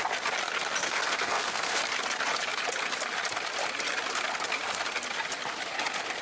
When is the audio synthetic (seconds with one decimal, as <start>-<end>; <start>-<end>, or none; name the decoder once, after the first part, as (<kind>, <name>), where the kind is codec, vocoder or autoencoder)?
0.8-1.8 (codec, SNAC)